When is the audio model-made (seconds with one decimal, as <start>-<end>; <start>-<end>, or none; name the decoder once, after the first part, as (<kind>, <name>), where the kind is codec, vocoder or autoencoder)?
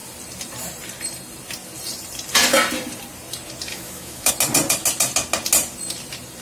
3.7-4.3 (autoencoder, DAC-VAE)